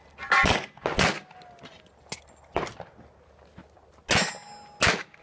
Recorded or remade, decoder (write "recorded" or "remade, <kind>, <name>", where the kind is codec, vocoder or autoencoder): recorded